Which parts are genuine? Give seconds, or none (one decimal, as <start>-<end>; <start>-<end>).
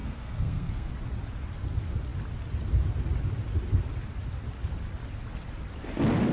0.9-6.3